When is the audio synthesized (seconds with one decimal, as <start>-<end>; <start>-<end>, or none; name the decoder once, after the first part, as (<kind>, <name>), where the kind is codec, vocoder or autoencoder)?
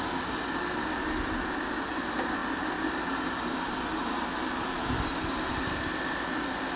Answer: none